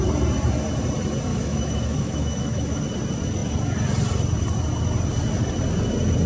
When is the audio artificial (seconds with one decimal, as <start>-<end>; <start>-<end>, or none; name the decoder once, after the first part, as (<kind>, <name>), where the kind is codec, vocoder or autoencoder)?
1.3-2.8 (autoencoder, DAC-VAE)